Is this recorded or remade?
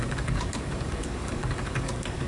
remade